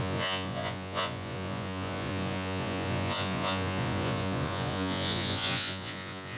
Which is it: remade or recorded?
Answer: remade